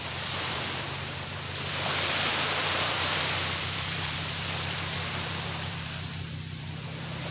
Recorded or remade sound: remade